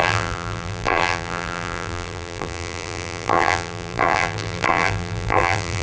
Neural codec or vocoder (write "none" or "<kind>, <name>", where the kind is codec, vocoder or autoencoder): vocoder, BigVGAN v2